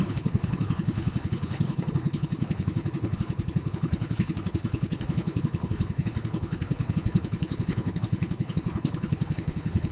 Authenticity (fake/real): fake